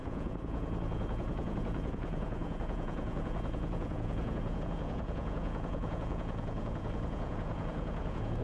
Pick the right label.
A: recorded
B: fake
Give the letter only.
B